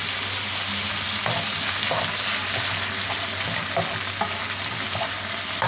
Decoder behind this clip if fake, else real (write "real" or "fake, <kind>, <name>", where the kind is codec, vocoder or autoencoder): real